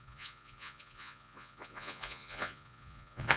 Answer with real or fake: fake